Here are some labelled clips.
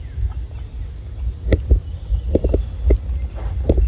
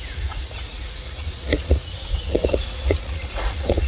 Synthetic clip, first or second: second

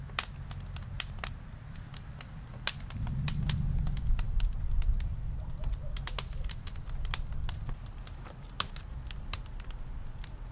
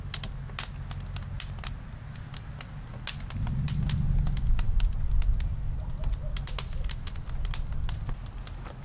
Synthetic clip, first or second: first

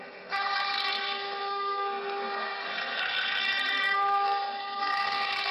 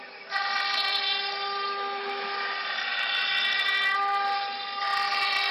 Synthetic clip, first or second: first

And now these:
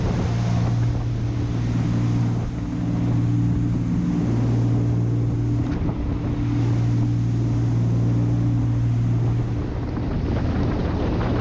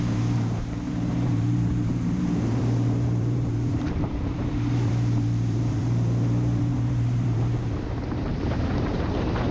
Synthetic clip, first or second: second